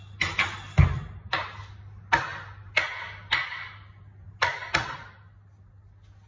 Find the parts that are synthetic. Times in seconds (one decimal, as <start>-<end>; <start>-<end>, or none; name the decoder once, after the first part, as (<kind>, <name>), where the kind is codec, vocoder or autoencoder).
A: 4.6-5.2 (vocoder, BigVGAN v2)